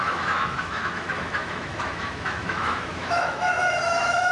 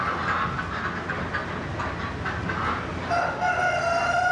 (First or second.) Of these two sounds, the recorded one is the second